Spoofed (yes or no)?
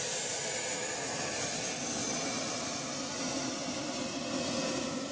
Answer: no